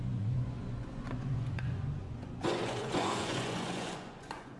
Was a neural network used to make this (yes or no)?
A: yes